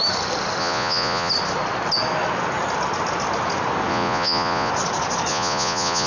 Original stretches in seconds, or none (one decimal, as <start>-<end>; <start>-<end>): 0.0-0.6; 1.3-3.9; 4.7-5.3